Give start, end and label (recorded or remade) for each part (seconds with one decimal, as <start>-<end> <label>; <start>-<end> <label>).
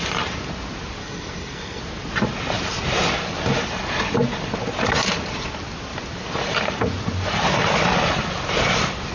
0.0-1.0 recorded; 1.0-1.8 remade; 1.8-9.1 recorded